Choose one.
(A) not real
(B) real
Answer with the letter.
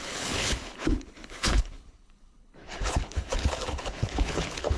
A